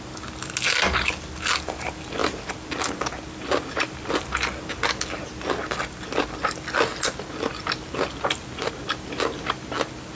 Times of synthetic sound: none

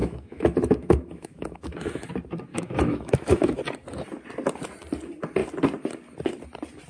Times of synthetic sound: 0.0-2.1 (autoencoder, DAC-VAE); 2.5-3.6

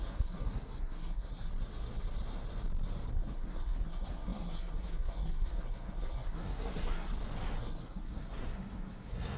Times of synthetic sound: 0.0-1.5 (codec, SNAC); 3.1-7.1; 7.6-9.4